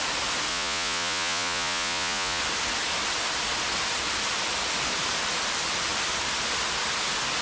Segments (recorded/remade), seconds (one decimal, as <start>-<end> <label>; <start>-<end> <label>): 0.0-0.5 recorded; 0.5-2.4 remade; 2.4-7.4 recorded

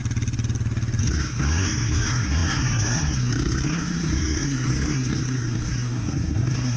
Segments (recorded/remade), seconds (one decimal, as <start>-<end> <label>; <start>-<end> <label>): 0.0-1.0 recorded; 1.0-6.8 remade

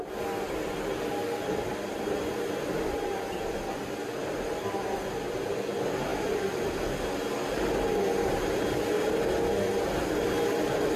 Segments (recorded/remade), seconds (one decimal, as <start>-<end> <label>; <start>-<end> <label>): 0.0-1.9 recorded; 1.9-3.6 remade; 3.6-11.0 recorded

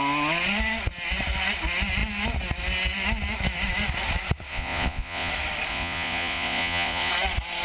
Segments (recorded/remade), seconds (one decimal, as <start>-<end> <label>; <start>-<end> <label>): 0.0-4.5 recorded; 4.5-5.3 remade; 5.3-5.7 recorded; 5.7-7.1 remade; 7.1-7.6 recorded